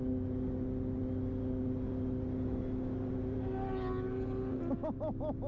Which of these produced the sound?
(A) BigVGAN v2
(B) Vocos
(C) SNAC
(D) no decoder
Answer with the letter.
D